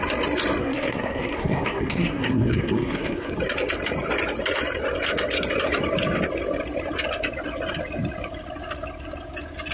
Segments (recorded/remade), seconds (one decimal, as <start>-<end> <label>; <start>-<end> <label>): 0.0-0.6 recorded; 0.6-3.3 remade; 3.3-9.7 recorded